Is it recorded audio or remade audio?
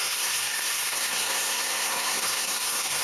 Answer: remade